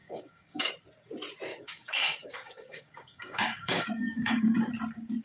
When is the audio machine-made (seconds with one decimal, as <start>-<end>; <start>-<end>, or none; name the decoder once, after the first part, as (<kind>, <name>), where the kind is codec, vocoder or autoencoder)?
0.0-0.7 (codec, DAC); 1.5-4.6